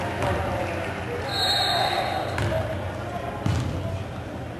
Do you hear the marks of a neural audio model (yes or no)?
no